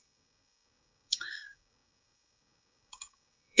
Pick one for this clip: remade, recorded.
remade